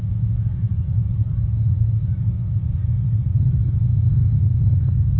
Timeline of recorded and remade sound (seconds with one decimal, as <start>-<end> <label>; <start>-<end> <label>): 0.0-0.7 recorded; 0.7-3.8 remade; 3.8-4.2 recorded; 4.2-5.2 remade